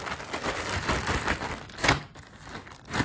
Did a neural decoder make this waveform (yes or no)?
no